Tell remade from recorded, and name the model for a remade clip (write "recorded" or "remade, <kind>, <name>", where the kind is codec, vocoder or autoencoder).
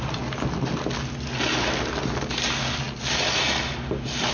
recorded